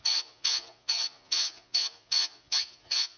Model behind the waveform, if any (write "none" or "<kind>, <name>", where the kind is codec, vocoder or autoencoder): vocoder, Vocos